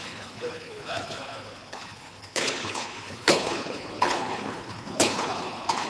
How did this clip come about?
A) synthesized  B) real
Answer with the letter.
A